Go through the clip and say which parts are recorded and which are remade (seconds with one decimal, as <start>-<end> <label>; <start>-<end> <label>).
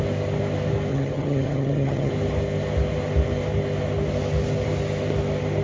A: 0.0-0.9 recorded; 0.9-2.1 remade; 2.1-5.6 recorded